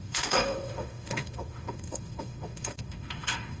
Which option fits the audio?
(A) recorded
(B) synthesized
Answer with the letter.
B